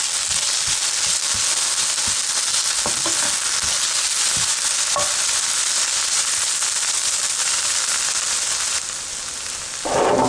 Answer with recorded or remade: recorded